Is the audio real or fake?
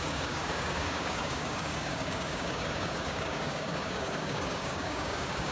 fake